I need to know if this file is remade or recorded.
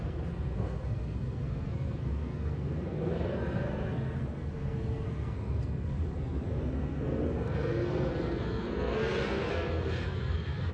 remade